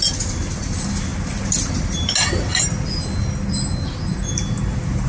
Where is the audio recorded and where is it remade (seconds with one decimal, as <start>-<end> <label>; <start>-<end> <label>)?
0.0-5.1 recorded